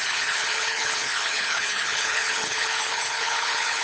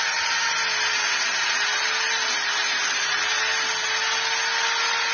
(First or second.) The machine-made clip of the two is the first